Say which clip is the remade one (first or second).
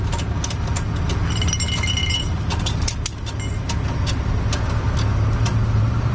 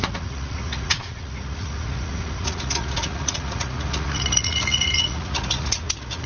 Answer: second